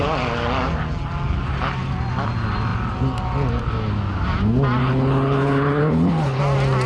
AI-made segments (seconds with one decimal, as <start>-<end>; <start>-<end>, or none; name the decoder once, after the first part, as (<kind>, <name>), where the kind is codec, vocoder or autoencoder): 4.8-6.4 (codec, HILCodec)

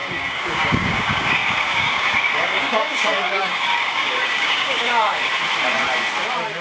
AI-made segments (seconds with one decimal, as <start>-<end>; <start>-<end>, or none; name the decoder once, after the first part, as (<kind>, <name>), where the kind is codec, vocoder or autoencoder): 0.0-5.3 (codec, DAC)

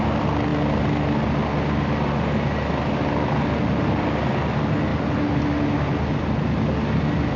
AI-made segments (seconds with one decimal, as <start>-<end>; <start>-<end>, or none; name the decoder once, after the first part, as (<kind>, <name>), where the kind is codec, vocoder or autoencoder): none